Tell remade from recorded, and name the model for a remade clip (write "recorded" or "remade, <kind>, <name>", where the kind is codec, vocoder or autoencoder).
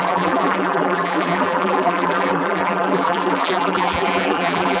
remade, vocoder, BigVGAN v2